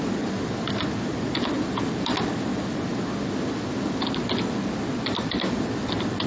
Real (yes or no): yes